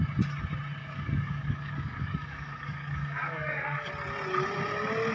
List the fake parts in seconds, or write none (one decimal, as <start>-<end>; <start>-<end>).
0.8-3.9